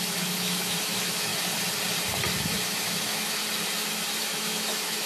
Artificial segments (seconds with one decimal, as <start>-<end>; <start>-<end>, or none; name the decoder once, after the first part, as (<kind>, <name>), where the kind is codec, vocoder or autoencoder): 0.0-1.3 (autoencoder, DAC-VAE); 2.4-3.4; 4.2-5.1